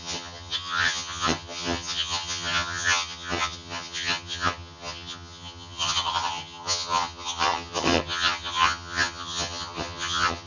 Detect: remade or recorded remade